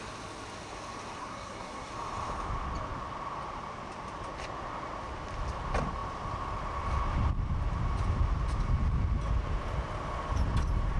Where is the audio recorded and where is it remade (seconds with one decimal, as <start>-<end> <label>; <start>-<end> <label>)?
0.0-1.2 recorded; 1.2-1.9 remade; 1.9-11.0 recorded